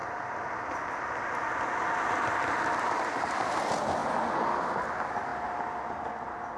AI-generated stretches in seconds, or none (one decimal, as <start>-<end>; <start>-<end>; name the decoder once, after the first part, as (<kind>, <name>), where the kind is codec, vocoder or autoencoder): none